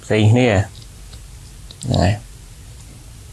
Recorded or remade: recorded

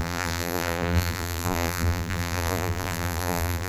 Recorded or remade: remade